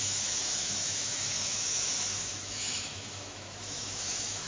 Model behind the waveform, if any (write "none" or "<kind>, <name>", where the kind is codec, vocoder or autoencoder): autoencoder, DAC-VAE